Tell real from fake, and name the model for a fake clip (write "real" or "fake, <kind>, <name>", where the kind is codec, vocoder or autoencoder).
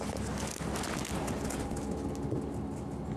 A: real